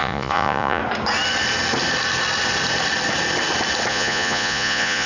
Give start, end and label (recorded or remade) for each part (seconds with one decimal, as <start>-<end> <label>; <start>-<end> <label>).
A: 0.0-0.8 remade; 0.8-3.9 recorded; 3.9-5.1 remade